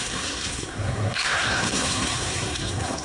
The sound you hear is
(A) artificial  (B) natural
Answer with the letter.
A